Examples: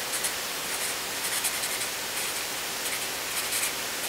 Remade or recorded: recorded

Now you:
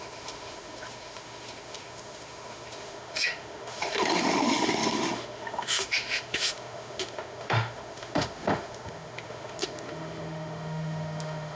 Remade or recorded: remade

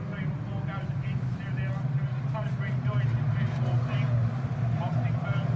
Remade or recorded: recorded